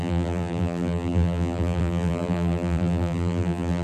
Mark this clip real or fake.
fake